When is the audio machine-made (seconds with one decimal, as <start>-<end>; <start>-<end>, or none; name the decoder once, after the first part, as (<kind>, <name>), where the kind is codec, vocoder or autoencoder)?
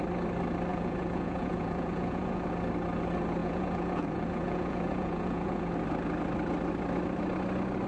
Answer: 0.7-2.5 (vocoder, Vocos); 3.4-5.7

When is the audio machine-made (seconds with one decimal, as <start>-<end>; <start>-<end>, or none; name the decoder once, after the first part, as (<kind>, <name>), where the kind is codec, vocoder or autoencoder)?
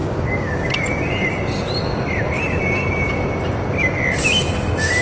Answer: 0.0-0.7 (codec, DAC)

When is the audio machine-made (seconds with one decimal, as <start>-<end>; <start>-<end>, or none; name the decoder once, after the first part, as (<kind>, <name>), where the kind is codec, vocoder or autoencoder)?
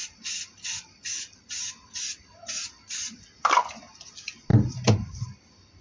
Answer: none